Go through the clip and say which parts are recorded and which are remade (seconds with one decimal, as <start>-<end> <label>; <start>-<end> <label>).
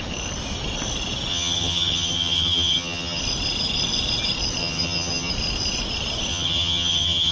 0.0-1.3 recorded; 1.3-3.2 remade; 3.2-4.6 recorded; 4.6-5.3 remade; 5.3-6.3 recorded; 6.3-7.3 remade